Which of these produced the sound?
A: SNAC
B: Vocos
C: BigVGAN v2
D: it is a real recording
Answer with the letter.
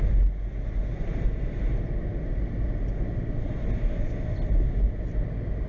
D